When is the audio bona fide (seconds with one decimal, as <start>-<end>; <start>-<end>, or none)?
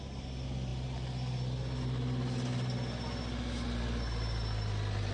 0.0-5.1